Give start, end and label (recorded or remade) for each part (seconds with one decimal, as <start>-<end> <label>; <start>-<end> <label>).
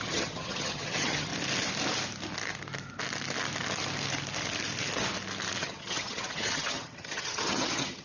0.0-1.3 remade; 1.3-5.6 recorded; 5.6-8.0 remade